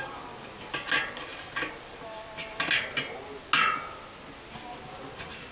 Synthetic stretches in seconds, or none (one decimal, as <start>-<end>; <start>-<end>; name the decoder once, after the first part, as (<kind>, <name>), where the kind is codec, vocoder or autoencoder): none